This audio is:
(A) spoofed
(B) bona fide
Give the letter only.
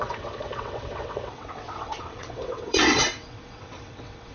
A